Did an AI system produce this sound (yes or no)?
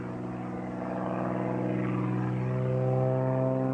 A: no